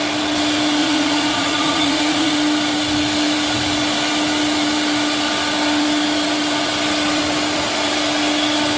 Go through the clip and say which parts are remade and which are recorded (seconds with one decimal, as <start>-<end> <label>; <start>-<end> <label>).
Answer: 0.0-0.8 recorded; 0.8-2.3 remade; 2.3-8.8 recorded